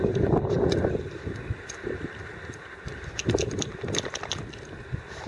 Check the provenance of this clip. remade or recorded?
recorded